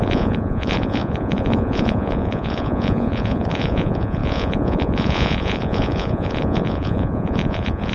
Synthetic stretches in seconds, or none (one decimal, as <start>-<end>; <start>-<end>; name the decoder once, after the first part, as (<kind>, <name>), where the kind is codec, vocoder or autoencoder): 0.0-7.9 (vocoder, Vocos)

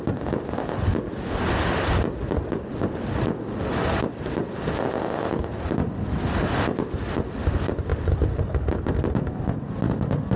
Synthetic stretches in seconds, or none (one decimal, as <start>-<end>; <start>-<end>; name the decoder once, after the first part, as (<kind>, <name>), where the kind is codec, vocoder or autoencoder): none

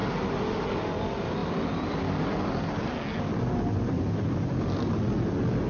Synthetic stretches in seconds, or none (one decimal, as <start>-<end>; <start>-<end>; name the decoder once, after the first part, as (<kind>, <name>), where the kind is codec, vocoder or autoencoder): none

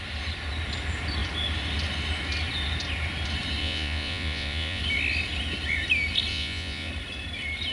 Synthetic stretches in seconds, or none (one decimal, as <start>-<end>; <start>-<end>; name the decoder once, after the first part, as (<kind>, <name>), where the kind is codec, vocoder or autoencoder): 3.6-4.8 (vocoder, Vocos); 6.3-6.9

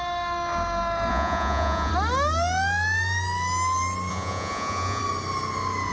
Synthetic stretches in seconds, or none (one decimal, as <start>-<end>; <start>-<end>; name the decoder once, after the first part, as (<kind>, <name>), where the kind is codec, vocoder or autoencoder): 1.1-1.9 (vocoder, Vocos); 4.1-5.0

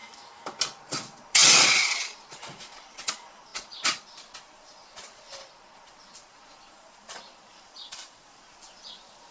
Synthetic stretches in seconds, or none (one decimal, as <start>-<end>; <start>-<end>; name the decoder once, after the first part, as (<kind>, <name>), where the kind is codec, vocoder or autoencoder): 0.8-9.3 (vocoder, Vocos)